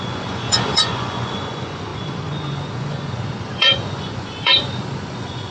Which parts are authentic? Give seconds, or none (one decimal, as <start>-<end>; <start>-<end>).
none